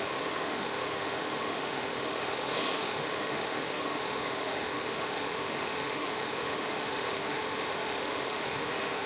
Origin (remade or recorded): remade